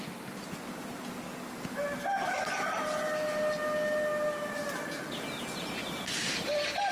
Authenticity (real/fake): real